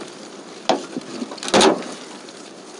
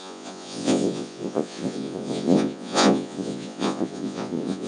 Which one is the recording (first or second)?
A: first